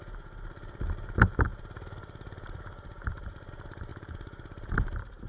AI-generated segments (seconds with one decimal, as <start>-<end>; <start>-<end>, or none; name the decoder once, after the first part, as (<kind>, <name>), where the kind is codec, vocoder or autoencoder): 1.5-3.5 (vocoder, BigVGAN v2); 3.9-5.3